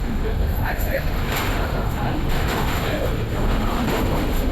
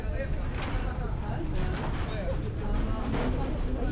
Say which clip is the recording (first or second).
second